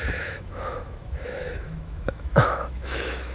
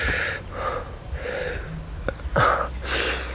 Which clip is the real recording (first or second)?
second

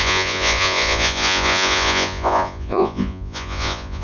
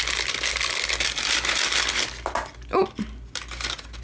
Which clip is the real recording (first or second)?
second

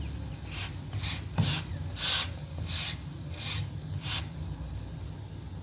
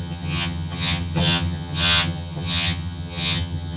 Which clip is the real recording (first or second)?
first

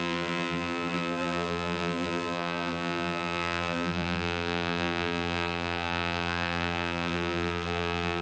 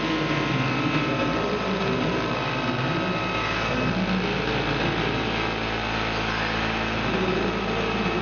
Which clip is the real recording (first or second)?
second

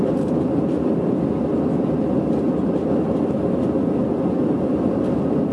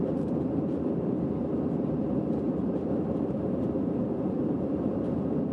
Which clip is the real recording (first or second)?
first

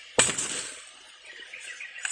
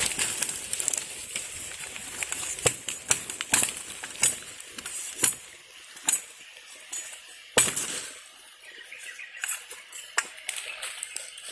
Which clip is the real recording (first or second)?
second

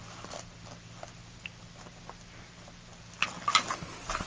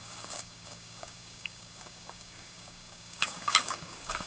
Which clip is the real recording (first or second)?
first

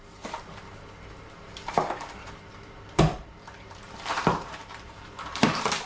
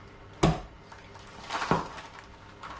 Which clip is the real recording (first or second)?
second